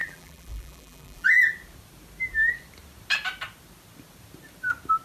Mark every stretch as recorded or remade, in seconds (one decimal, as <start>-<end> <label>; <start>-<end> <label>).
0.0-1.4 remade; 1.4-5.0 recorded